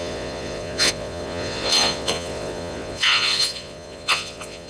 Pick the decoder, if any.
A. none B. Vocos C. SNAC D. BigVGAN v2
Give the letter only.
B